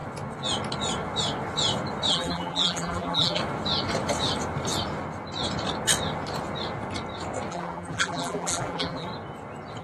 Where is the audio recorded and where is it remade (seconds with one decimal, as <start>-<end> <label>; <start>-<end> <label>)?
0.0-2.1 recorded; 2.1-3.4 remade; 3.4-7.5 recorded; 7.5-9.1 remade; 9.1-9.8 recorded